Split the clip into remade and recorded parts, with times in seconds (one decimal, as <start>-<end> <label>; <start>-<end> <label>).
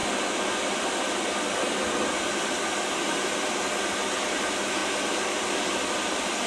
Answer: 0.0-6.5 recorded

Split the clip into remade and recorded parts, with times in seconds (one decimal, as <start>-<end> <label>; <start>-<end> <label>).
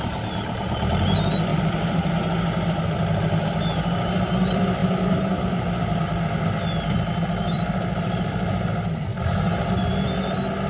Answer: 0.0-1.5 recorded; 1.5-2.1 remade; 2.1-4.8 recorded; 4.8-6.0 remade; 6.0-9.1 recorded; 9.1-9.7 remade; 9.7-10.7 recorded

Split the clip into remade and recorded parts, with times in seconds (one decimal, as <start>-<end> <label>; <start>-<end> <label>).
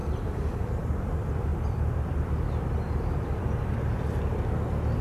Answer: 0.0-1.1 remade; 1.1-1.5 recorded; 1.5-4.5 remade; 4.5-5.0 recorded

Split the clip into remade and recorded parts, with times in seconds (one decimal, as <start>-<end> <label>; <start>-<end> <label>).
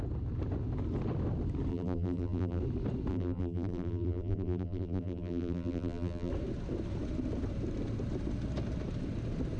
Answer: 0.0-1.7 recorded; 1.7-2.6 remade; 2.6-3.1 recorded; 3.1-6.3 remade; 6.3-9.6 recorded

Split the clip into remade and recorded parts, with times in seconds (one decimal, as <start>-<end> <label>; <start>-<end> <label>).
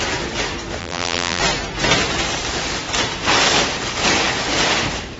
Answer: 0.0-0.8 recorded; 0.8-1.4 remade; 1.4-5.2 recorded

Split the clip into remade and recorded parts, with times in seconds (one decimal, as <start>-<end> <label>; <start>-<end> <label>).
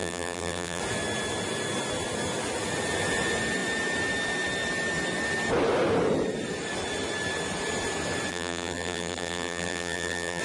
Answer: 0.0-0.8 remade; 0.8-8.3 recorded; 8.3-10.4 remade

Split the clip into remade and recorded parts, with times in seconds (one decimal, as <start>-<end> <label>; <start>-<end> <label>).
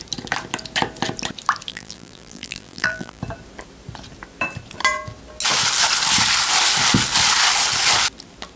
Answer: 0.0-1.7 recorded; 1.7-3.2 remade; 3.2-8.6 recorded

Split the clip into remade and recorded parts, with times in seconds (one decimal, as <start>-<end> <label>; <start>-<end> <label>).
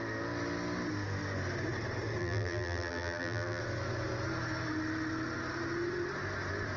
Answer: 0.0-2.2 recorded; 2.2-3.6 remade; 3.6-6.8 recorded